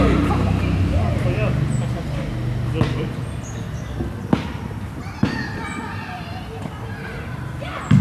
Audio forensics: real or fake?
real